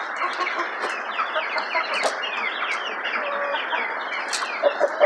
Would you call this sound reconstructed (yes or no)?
no